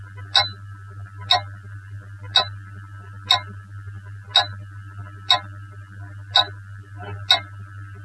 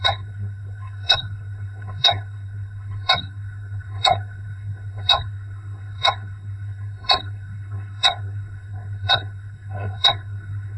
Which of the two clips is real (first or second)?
first